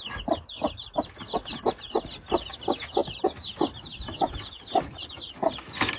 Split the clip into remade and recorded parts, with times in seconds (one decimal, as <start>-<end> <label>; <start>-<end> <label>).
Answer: 0.0-6.0 recorded